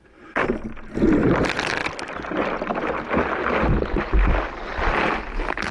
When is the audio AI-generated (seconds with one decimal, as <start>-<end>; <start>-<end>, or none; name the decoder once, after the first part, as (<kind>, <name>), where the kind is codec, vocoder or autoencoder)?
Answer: 0.0-5.7 (vocoder, BigVGAN v2)